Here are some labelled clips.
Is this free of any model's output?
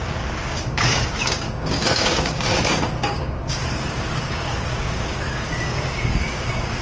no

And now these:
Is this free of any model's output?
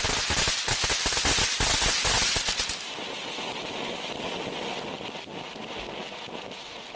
yes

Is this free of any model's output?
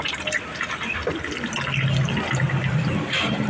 yes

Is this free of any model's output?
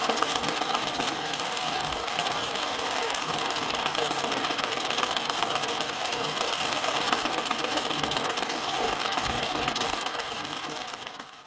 no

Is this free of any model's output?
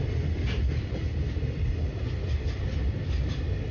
yes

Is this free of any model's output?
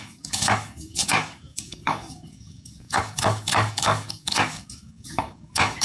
no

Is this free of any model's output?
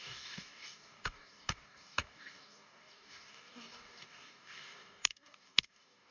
no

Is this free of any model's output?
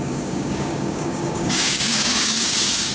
no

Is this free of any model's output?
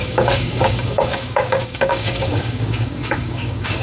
no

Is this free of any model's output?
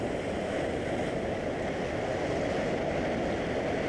yes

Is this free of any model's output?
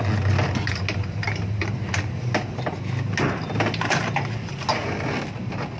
yes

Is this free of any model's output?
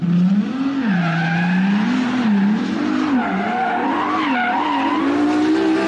yes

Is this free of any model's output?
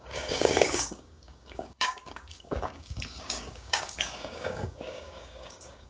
no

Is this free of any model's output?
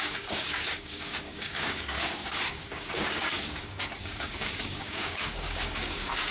no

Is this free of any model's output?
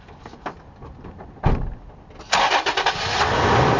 yes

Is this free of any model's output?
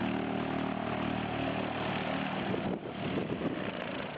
yes